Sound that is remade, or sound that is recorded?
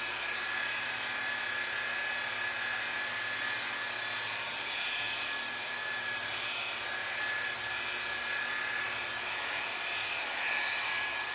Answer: recorded